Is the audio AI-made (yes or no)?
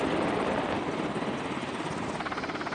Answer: no